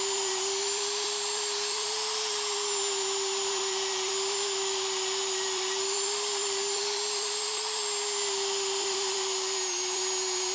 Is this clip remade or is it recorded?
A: remade